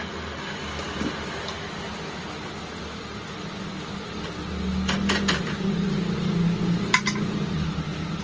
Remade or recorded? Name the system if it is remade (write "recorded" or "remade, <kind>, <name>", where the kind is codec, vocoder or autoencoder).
recorded